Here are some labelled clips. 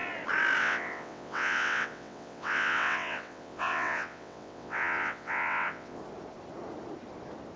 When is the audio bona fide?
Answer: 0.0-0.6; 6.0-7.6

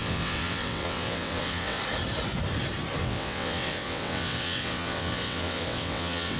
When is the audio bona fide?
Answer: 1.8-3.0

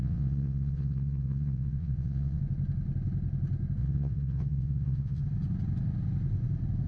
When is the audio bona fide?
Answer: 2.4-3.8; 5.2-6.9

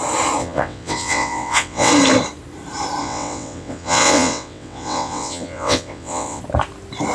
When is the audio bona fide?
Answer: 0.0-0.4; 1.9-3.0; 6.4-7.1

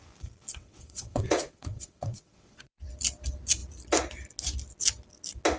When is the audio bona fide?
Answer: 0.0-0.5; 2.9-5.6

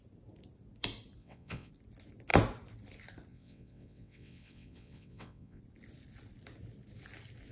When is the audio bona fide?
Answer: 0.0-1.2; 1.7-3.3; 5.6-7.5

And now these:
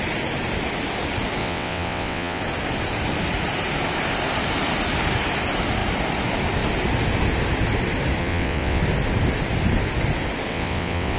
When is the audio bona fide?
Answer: 0.0-1.4; 2.4-8.2; 8.8-10.5

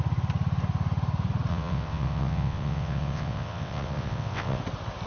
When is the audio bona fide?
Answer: 0.0-1.5; 4.6-5.1